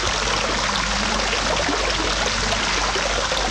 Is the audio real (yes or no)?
yes